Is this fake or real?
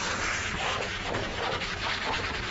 real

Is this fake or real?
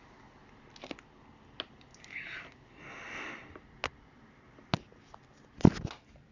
real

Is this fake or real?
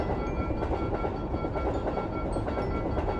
real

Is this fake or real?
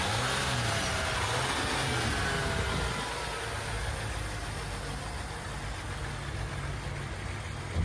real